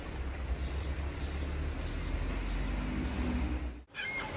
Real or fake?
real